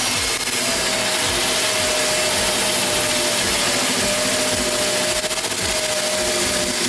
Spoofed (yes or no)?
no